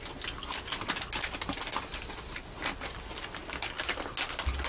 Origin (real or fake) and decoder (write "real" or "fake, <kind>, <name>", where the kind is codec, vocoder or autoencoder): real